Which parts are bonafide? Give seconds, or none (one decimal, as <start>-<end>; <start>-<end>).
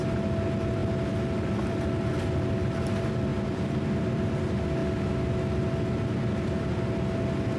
0.0-3.3; 4.3-7.6